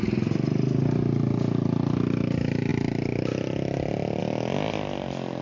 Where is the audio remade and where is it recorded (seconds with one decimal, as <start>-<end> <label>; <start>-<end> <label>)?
0.0-1.2 recorded; 1.2-2.3 remade; 2.3-2.7 recorded; 2.7-4.2 remade; 4.2-5.4 recorded